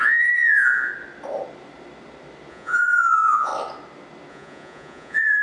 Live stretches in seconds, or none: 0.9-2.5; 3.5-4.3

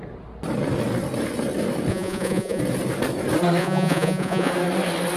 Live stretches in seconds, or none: 0.0-1.9; 2.6-3.6; 4.5-5.2

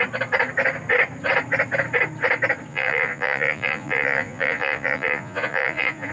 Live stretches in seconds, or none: 0.0-2.7

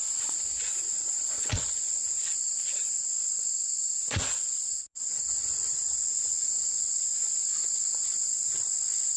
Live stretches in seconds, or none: 3.1-3.7; 7.0-9.2

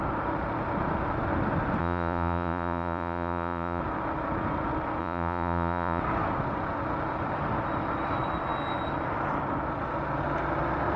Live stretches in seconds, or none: 0.0-1.8; 3.8-5.0; 6.0-11.0

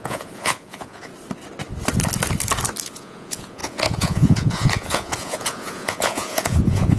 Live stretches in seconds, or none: 1.1-2.8

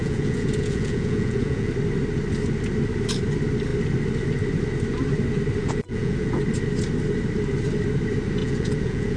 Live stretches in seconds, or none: 1.7-5.6; 6.4-8.4